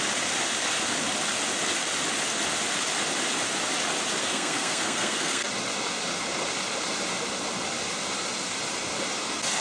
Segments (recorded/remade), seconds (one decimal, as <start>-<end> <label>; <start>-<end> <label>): 0.0-4.2 recorded; 4.2-5.5 remade; 5.5-9.6 recorded